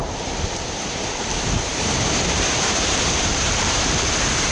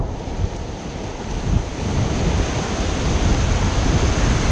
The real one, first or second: second